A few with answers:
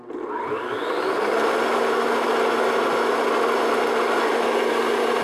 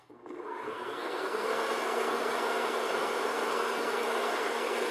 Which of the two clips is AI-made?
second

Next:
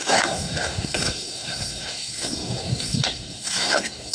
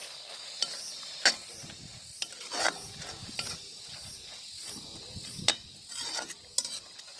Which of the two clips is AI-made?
first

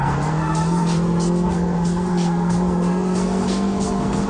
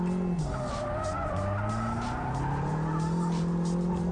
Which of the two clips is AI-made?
first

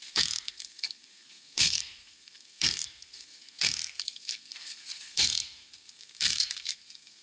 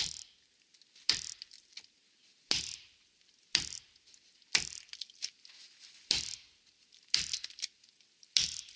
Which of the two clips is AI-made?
first